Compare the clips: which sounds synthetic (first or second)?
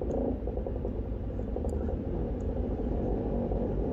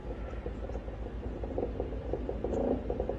first